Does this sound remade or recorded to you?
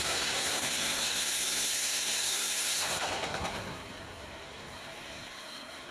remade